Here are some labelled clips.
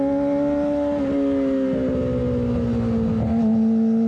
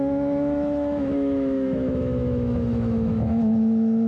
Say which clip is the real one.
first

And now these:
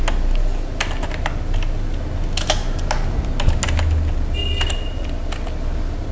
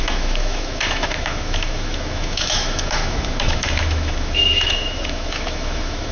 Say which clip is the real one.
first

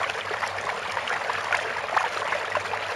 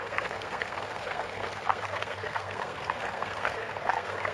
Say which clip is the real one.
first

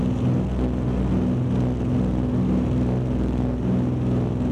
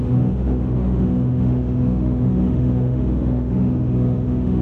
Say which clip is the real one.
first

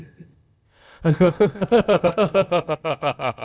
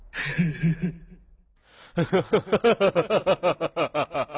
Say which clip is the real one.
second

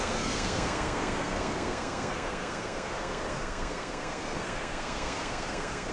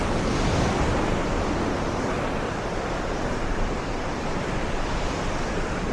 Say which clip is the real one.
second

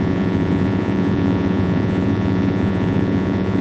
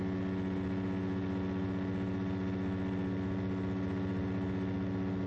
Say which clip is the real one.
second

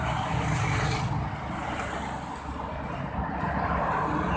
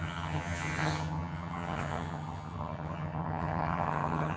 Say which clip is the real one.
first